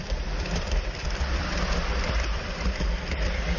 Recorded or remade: remade